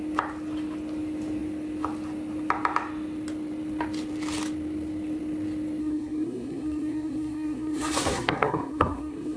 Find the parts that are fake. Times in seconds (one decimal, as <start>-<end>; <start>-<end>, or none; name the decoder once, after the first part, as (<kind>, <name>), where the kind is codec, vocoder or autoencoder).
5.8-9.4 (codec, SNAC)